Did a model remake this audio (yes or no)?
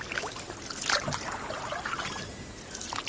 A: no